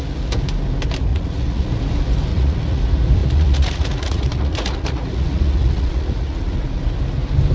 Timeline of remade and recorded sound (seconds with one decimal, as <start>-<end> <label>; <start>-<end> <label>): 0.0-1.1 recorded; 1.1-1.8 remade; 1.8-2.3 recorded; 2.3-2.8 remade; 2.8-3.2 recorded; 3.2-6.8 remade; 6.8-7.5 recorded

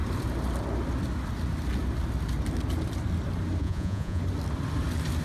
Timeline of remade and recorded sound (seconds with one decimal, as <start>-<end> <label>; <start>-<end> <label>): 0.0-3.6 recorded; 3.6-4.2 remade; 4.2-5.2 recorded

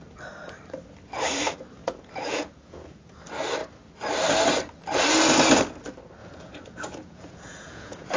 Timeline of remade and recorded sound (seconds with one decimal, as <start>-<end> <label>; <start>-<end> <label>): 0.0-1.8 recorded; 1.8-3.1 remade; 3.1-6.2 recorded; 6.2-8.2 remade